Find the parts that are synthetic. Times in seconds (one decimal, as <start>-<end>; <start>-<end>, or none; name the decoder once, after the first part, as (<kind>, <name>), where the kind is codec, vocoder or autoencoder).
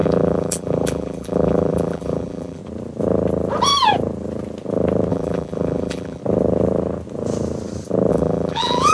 0.0-2.6 (vocoder, BigVGAN v2); 5.1-6.2; 8.1-8.9